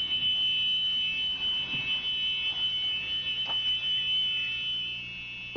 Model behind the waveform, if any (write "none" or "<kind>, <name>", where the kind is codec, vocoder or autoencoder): none